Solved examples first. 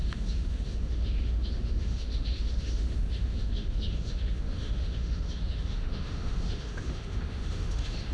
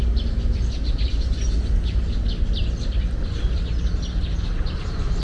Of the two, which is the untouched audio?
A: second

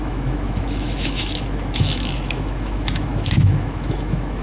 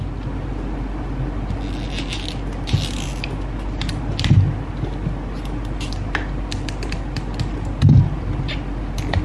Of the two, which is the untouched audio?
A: second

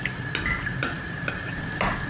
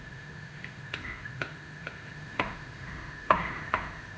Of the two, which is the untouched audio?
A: first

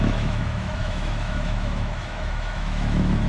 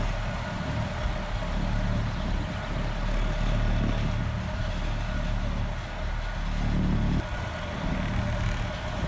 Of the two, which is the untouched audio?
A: second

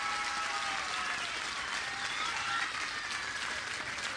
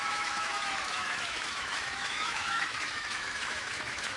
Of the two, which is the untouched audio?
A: first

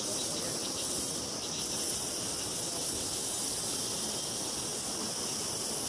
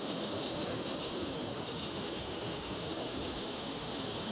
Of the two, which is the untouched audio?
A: first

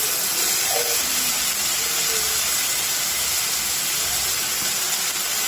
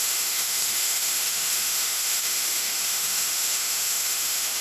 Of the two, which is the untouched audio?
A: first